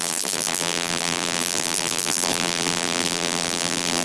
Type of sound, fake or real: fake